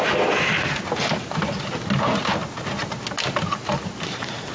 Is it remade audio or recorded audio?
recorded